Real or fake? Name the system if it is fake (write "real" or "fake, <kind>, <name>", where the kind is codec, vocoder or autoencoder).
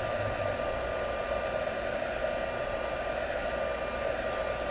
real